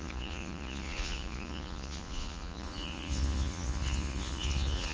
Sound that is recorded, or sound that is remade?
remade